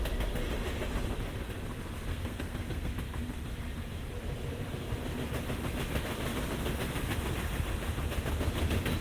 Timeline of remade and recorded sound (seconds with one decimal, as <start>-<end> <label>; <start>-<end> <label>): 0.0-2.1 recorded; 2.1-2.9 remade; 2.9-9.0 recorded